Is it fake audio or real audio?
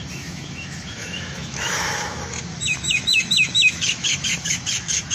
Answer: fake